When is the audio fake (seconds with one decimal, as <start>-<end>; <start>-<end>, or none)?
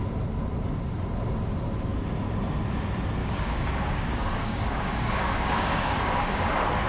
3.2-6.5